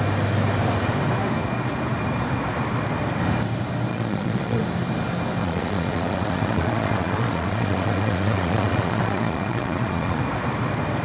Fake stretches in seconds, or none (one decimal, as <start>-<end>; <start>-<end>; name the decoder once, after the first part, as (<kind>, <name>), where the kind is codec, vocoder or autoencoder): 3.9-4.6 (vocoder, Vocos); 5.4-10.2